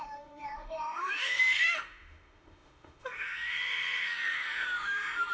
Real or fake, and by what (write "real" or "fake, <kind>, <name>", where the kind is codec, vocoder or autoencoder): fake, autoencoder, DAC-VAE